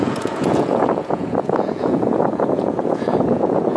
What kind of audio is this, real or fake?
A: fake